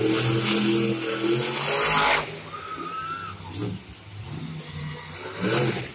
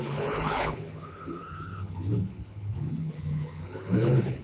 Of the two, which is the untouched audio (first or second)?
first